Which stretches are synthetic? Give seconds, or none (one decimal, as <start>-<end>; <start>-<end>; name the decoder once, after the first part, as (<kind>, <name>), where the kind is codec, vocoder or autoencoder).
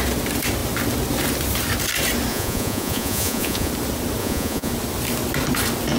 2.3-3.7 (vocoder, Vocos); 4.2-4.7